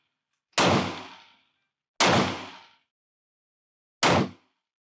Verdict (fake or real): real